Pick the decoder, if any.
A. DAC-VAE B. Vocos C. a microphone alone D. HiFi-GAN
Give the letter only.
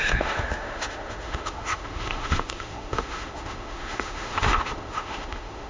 A